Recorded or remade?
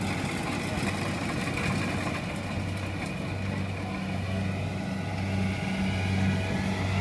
recorded